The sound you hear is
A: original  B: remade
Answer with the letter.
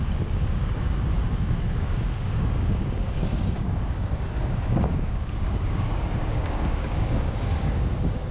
B